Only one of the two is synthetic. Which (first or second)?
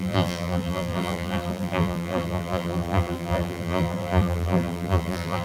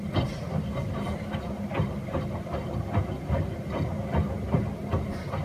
first